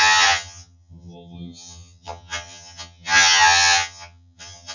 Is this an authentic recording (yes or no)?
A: no